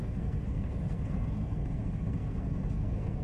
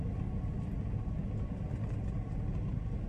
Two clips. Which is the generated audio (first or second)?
first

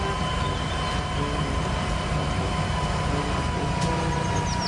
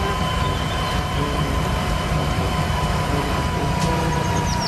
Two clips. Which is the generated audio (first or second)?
second